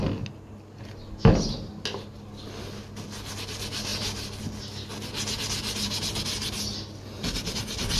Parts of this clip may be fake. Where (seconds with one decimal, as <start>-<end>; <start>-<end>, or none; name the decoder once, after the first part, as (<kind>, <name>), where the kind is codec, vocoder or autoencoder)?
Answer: none